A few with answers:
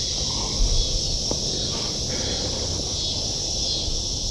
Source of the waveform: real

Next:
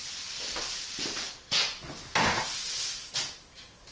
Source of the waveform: real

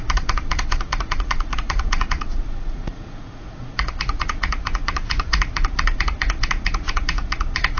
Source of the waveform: fake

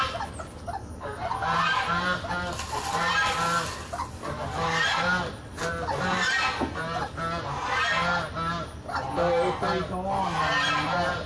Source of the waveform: real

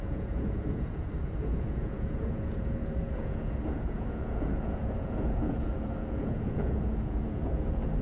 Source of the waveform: fake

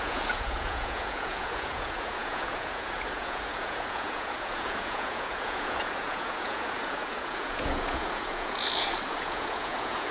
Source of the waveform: fake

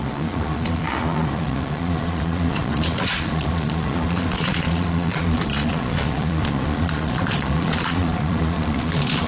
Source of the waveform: fake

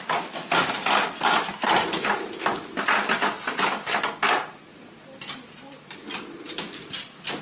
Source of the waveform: real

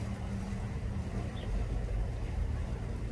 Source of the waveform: fake